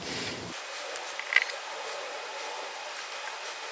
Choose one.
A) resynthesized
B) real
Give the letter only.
B